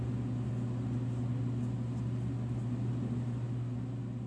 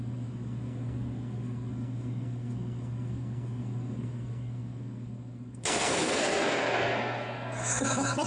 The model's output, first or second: second